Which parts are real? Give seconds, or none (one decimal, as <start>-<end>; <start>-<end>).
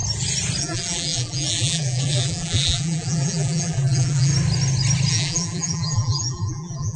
0.0-0.6; 4.3-5.1